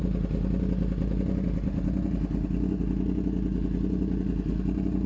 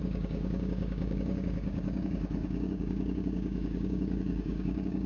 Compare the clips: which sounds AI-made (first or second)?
second